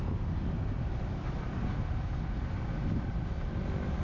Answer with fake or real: real